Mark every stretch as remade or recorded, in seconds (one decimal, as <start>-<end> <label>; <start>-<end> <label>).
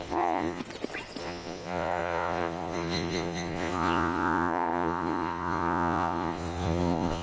0.0-0.6 remade; 0.6-1.2 recorded; 1.2-7.2 remade